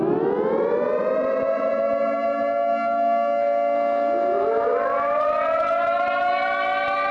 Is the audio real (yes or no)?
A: yes